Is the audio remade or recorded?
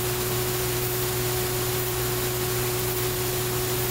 recorded